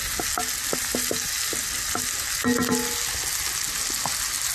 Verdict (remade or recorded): recorded